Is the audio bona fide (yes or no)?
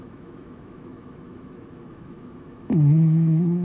no